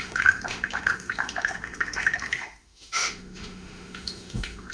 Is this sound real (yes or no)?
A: no